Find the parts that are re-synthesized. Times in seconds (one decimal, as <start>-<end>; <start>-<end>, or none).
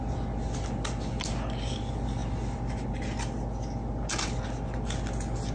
none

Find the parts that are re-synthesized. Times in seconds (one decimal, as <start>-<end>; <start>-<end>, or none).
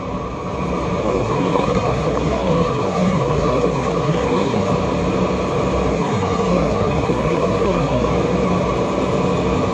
1.0-4.7; 5.9-8.1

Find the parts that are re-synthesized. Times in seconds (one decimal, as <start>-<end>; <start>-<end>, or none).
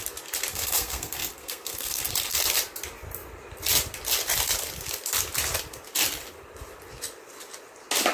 0.5-2.4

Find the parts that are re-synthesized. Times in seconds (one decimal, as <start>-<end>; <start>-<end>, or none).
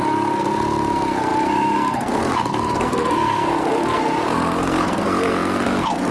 0.0-6.1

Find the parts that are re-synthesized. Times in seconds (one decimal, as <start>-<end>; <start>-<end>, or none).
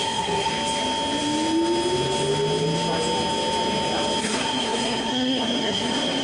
0.0-0.5; 4.2-6.2